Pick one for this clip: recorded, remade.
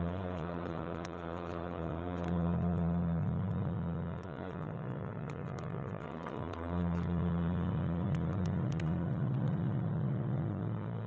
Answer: remade